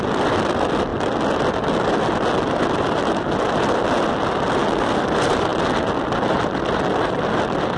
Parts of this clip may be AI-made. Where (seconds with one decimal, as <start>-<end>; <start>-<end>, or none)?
none